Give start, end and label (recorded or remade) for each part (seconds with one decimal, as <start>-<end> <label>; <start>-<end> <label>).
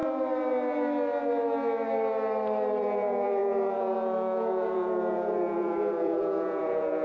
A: 0.0-2.8 recorded; 2.8-7.0 remade